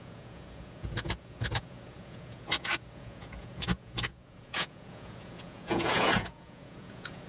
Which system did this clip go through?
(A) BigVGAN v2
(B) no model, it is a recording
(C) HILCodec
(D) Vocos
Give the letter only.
D